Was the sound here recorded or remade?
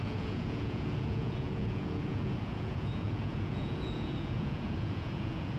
remade